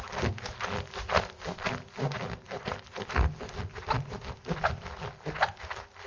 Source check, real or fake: real